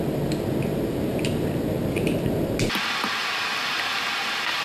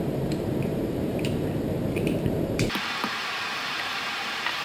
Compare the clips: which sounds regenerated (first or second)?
second